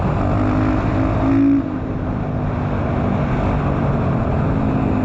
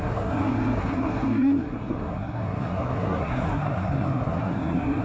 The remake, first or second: second